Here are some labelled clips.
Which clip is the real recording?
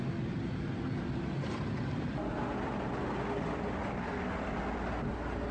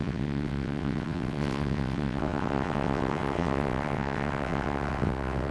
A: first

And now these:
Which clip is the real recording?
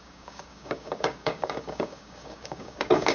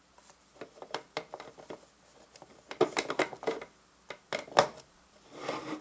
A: second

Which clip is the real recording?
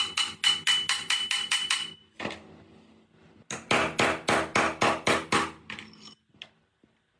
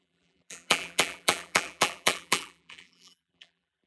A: first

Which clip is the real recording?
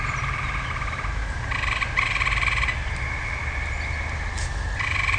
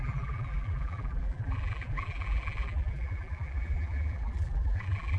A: first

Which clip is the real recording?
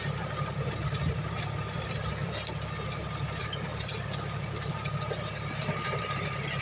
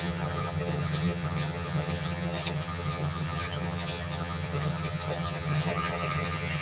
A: first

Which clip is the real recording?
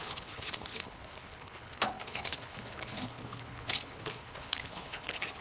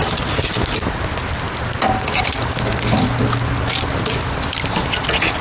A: second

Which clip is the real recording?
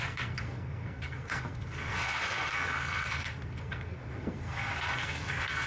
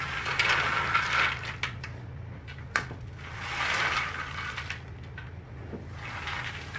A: second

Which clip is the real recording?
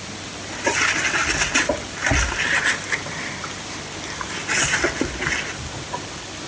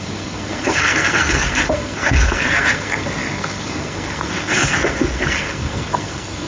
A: first